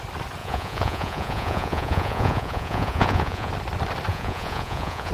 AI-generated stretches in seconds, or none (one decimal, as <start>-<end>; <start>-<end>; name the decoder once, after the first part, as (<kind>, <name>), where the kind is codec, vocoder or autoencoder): 0.4-3.5 (vocoder, Vocos); 4.1-5.1